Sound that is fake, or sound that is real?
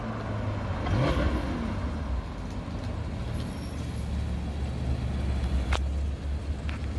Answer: real